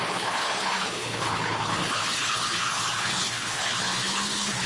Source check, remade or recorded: remade